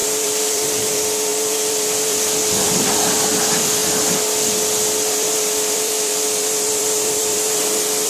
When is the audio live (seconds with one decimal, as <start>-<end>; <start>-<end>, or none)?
3.8-5.1